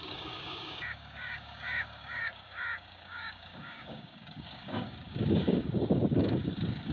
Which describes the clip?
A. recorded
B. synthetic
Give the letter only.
B